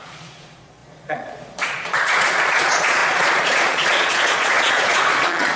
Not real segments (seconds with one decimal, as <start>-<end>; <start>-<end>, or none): 0.0-5.6